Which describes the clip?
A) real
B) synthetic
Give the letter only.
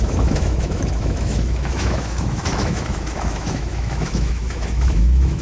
B